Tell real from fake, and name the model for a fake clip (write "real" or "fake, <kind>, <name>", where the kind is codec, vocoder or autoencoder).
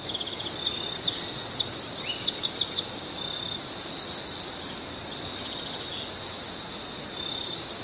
real